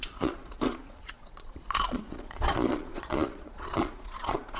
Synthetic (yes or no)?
yes